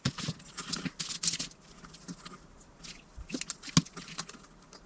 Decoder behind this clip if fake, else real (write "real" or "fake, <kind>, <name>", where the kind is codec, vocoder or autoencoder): real